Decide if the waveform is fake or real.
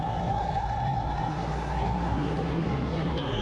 fake